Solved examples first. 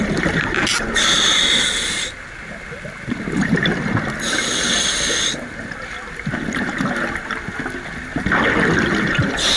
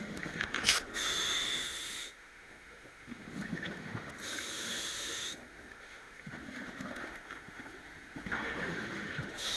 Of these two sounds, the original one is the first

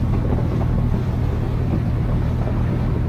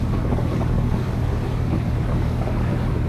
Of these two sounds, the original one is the first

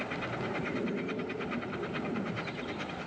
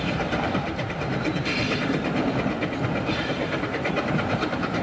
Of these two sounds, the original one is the first